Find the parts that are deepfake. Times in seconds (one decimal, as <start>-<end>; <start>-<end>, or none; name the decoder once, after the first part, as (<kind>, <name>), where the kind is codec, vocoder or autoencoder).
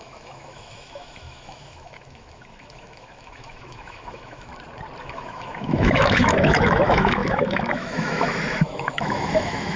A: 0.0-4.5 (autoencoder, DAC-VAE); 5.0-9.8